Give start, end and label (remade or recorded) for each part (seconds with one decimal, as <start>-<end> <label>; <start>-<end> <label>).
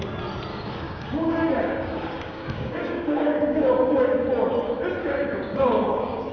0.0-0.5 recorded; 0.5-4.3 remade; 4.3-5.0 recorded; 5.0-6.3 remade